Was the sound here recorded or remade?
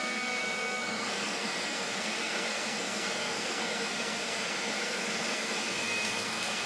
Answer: remade